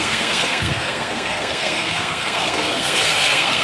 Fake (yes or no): yes